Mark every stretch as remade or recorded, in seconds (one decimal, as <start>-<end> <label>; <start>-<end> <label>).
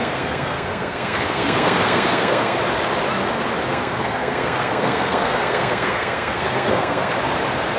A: 0.0-2.6 remade; 2.6-3.7 recorded; 3.7-7.1 remade; 7.1-7.8 recorded